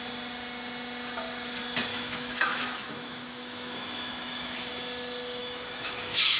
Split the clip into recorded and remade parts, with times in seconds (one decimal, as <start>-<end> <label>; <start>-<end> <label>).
0.0-1.9 recorded; 1.9-4.7 remade; 4.7-5.4 recorded; 5.4-6.4 remade